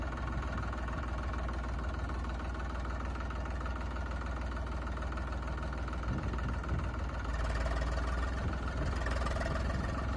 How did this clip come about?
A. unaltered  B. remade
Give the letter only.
A